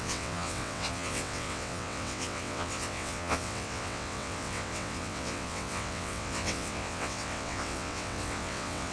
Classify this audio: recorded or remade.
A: remade